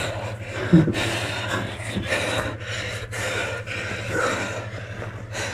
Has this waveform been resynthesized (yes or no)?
no